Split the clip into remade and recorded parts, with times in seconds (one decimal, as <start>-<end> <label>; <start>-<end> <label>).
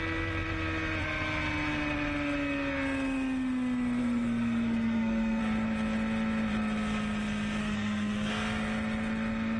0.0-4.0 recorded; 4.0-5.4 remade; 5.4-7.6 recorded; 7.6-8.3 remade; 8.3-9.6 recorded